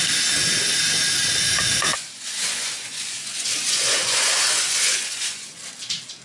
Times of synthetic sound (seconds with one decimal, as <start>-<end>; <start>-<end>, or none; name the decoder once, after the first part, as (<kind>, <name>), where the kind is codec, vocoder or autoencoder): 1.9-5.6 (vocoder, Vocos)